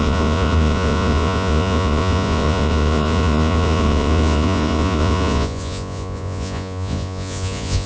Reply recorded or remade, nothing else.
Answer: remade